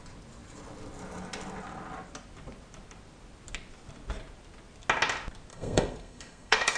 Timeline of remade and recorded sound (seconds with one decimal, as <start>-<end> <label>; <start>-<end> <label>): 0.0-5.5 recorded; 5.5-6.8 remade